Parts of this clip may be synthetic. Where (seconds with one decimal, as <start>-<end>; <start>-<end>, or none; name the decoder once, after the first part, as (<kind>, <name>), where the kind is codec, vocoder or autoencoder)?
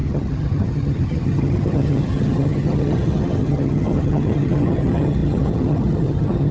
0.0-6.5 (vocoder, HiFi-GAN)